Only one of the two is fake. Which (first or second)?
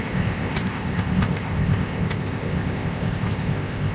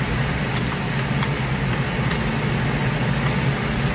first